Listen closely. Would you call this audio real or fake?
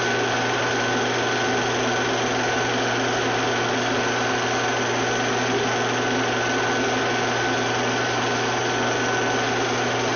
real